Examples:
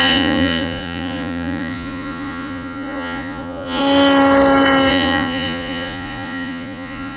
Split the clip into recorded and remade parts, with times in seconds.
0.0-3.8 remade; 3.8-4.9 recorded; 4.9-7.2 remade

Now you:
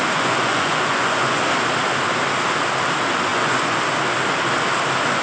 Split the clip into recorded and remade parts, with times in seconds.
0.0-1.4 remade; 1.4-3.3 recorded; 3.3-3.8 remade; 3.8-5.2 recorded

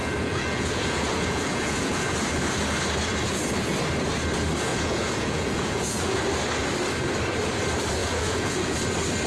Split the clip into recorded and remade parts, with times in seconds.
0.0-2.1 remade; 2.1-4.7 recorded; 4.7-6.2 remade; 6.2-8.0 recorded; 8.0-8.8 remade; 8.8-9.3 recorded

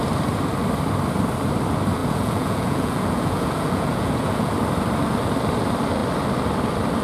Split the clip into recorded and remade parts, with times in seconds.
0.0-2.0 recorded; 2.0-4.5 remade; 4.5-7.0 recorded

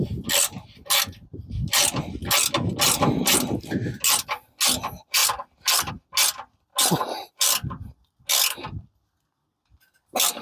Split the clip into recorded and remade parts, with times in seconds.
0.0-10.4 recorded

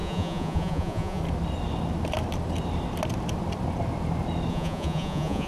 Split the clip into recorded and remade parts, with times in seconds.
0.0-1.2 remade; 1.2-4.5 recorded; 4.5-5.5 remade

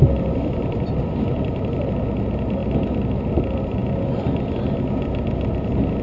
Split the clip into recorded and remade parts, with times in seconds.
0.0-6.0 recorded

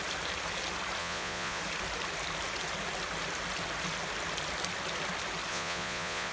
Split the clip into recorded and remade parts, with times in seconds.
0.0-1.0 recorded; 1.0-1.6 remade; 1.6-5.5 recorded; 5.5-6.3 remade